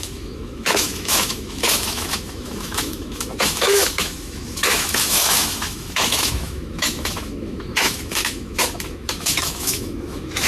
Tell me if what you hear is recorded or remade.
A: remade